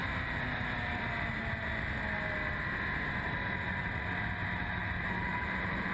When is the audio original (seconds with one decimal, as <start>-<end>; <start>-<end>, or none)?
1.4-5.9